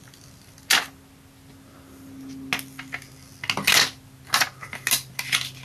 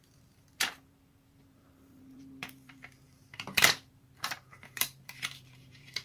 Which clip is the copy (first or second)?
second